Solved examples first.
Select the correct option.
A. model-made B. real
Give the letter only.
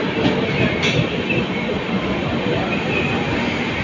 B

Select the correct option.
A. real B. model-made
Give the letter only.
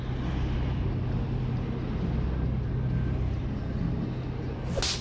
A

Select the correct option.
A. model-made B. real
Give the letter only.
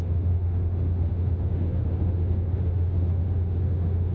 A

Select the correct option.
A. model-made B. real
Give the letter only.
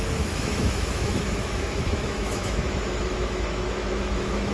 A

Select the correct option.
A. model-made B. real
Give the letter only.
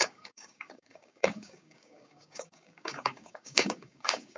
A